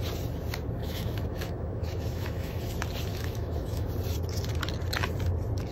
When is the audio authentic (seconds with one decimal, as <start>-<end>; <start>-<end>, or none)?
0.0-0.8; 2.6-3.1; 3.9-5.7